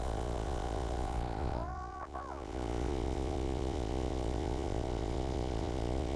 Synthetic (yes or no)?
yes